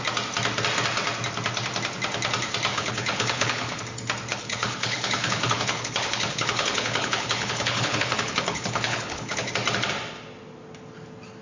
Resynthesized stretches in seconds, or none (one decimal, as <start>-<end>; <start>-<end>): 2.7-3.8; 4.3-9.5